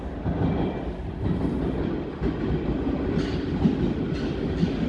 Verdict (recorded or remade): recorded